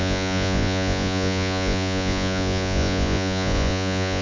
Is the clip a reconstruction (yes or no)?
yes